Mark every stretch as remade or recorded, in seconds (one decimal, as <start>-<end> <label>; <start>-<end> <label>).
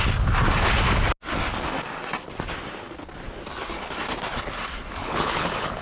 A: 0.0-5.0 recorded; 5.0-5.8 remade